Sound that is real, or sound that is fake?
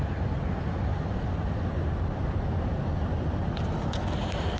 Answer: real